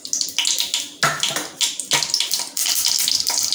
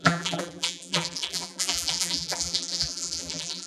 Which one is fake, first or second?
second